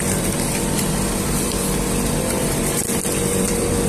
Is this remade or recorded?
remade